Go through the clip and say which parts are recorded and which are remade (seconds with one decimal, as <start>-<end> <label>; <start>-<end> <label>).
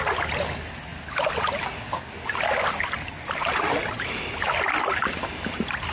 0.0-5.9 recorded